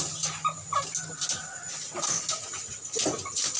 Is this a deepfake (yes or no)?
no